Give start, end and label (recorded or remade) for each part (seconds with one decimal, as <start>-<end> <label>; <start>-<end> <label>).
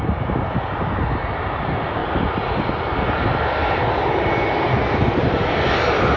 0.0-6.2 recorded